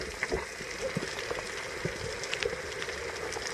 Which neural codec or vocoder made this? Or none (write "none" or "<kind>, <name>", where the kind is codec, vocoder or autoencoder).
none